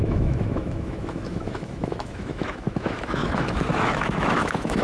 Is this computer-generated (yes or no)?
yes